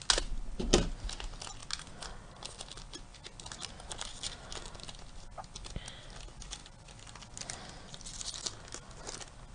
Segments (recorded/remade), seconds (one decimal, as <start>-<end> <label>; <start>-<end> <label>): 0.0-9.5 recorded